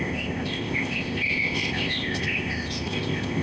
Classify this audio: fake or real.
fake